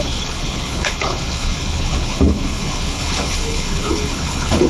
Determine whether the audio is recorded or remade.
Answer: remade